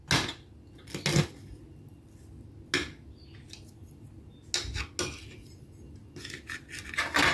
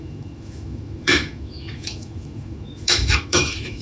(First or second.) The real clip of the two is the first